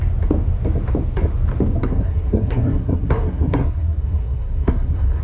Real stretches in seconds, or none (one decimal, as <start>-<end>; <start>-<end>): 0.0-1.8